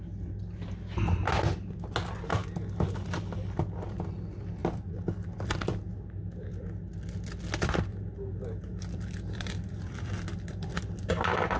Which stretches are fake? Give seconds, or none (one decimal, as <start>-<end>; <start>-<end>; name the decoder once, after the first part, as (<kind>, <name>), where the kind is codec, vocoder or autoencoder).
4.6-5.9 (vocoder, BigVGAN v2); 7.9-11.1